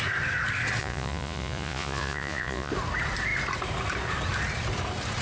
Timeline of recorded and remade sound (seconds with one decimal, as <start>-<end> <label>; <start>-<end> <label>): 0.0-0.8 recorded; 0.8-2.7 remade; 2.7-5.2 recorded